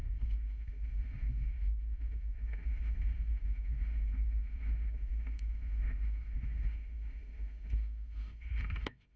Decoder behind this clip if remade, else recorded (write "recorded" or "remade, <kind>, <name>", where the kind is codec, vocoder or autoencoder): remade, autoencoder, DAC-VAE